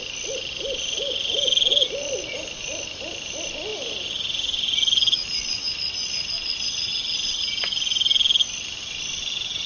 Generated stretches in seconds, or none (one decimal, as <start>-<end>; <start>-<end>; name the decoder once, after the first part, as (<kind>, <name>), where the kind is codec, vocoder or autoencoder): none